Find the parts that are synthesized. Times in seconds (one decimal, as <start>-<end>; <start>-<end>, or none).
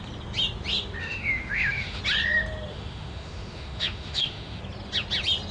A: 1.0-2.0; 2.7-4.6